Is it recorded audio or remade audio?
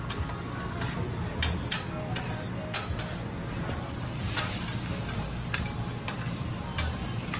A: recorded